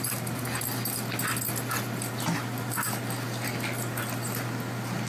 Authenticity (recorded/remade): recorded